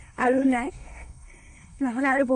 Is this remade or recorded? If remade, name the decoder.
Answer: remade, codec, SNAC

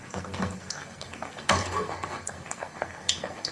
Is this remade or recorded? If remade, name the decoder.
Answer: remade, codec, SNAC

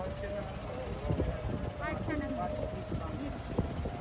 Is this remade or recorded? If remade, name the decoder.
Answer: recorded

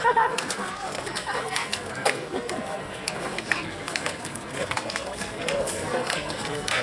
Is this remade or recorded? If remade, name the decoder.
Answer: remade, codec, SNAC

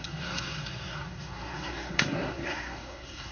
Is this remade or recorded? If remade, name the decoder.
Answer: remade, codec, SNAC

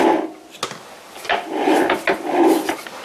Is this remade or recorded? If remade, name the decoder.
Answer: recorded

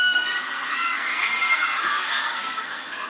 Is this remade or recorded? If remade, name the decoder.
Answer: remade, codec, SNAC